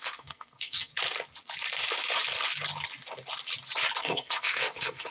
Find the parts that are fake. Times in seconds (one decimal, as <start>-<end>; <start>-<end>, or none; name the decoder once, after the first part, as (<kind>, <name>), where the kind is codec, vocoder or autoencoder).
0.0-0.9 (codec, SNAC); 4.0-5.1